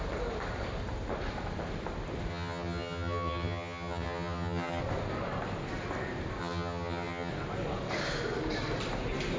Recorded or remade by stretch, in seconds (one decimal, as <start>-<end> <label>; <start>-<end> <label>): 0.0-2.3 recorded; 2.3-4.8 remade; 4.8-6.4 recorded; 6.4-7.3 remade; 7.3-9.4 recorded